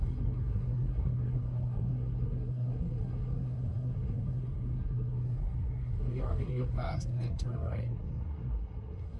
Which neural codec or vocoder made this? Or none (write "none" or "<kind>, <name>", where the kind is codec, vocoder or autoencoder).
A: codec, SNAC